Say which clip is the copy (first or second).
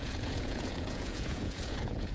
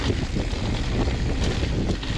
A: first